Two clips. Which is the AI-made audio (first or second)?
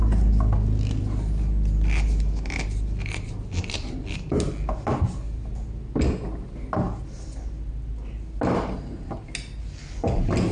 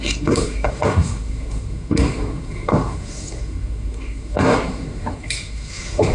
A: second